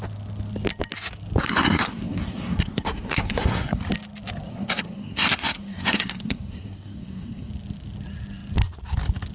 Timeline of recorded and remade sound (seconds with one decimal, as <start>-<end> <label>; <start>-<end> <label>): 0.0-1.5 recorded; 1.5-3.8 remade; 3.8-4.5 recorded; 4.5-7.5 remade; 7.5-9.3 recorded